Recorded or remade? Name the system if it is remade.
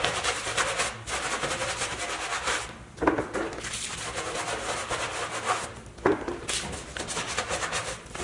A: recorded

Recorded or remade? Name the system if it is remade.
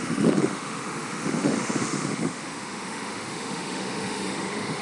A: remade, autoencoder, DAC-VAE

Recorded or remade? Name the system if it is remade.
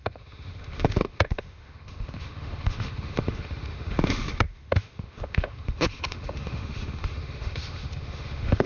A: remade, autoencoder, DAC-VAE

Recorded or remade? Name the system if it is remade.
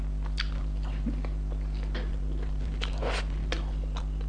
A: recorded